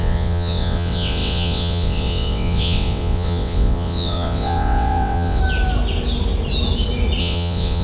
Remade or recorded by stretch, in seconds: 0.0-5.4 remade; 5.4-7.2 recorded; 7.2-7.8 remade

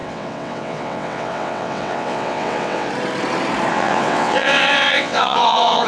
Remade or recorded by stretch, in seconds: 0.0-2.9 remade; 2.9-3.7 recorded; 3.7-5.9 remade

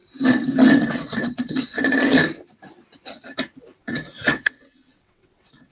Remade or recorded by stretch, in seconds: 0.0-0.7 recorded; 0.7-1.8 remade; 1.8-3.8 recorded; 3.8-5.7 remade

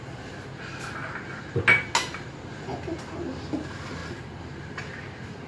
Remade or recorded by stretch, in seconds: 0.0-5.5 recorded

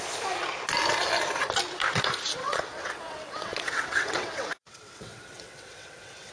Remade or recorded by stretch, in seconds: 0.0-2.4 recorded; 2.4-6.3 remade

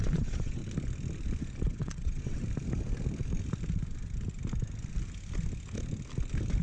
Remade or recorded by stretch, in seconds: 0.0-0.6 remade; 0.6-1.6 recorded; 1.6-2.4 remade; 2.4-6.6 recorded